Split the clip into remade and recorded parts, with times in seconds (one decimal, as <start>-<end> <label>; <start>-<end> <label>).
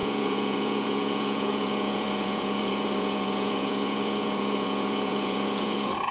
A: 0.0-6.1 remade